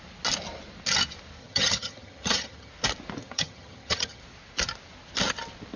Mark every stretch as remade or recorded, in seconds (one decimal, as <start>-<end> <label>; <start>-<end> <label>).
0.0-1.4 recorded; 1.4-2.7 remade; 2.7-3.2 recorded; 3.2-4.2 remade; 4.2-5.8 recorded